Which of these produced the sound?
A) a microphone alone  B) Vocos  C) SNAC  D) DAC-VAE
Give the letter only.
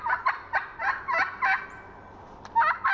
A